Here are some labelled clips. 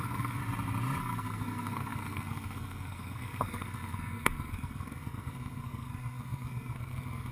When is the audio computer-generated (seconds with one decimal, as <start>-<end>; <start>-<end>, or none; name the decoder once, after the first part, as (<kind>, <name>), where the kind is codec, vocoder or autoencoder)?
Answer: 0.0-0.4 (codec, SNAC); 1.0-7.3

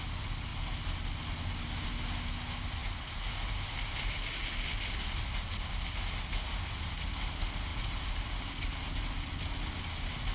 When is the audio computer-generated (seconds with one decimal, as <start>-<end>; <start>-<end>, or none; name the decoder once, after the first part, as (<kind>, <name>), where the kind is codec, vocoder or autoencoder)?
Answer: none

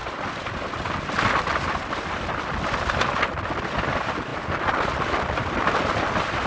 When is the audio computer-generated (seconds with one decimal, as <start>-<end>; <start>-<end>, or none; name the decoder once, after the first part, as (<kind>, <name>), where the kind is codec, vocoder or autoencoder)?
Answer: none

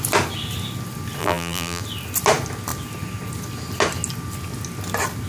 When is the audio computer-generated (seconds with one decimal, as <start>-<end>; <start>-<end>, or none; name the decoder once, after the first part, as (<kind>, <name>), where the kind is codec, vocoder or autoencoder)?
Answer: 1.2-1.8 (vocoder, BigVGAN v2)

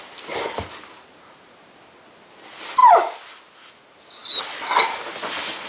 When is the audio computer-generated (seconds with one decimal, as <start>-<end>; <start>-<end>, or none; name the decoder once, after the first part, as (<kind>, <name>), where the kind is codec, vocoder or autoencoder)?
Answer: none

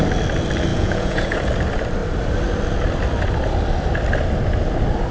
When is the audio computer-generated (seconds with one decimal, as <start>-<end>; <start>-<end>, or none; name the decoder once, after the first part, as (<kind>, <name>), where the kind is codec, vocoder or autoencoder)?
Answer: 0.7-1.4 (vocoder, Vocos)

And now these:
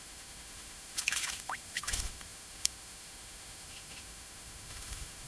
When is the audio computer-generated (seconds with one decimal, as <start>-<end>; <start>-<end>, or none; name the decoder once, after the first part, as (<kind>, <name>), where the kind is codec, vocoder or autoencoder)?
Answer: 0.0-5.3 (autoencoder, DAC-VAE)

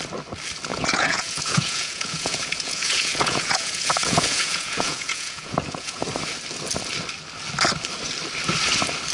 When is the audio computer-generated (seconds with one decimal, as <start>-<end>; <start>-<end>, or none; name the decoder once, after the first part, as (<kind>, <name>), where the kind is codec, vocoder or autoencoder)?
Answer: 0.7-6.0 (vocoder, Vocos)